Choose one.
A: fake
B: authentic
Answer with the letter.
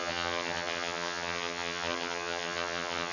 A